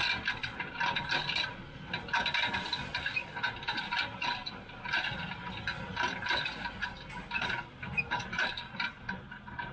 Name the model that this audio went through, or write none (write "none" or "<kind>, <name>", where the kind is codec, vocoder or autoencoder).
none